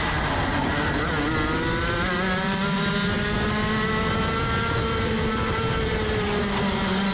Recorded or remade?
recorded